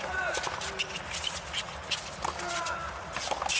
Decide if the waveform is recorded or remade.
recorded